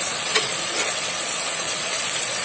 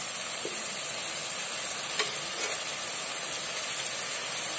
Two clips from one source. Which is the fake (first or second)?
first